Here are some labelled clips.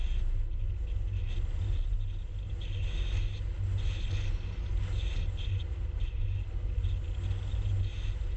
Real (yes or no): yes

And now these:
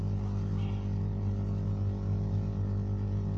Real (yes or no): yes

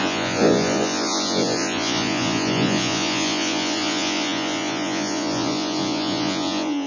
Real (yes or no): no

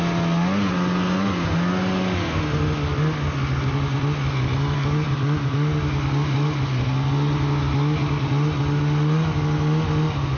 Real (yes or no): yes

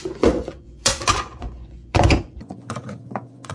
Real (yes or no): no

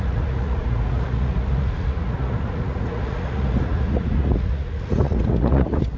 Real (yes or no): no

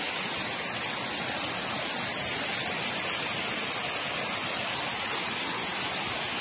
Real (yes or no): yes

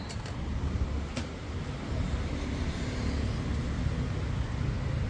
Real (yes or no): yes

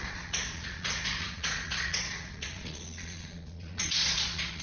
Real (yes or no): no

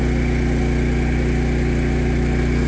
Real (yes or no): yes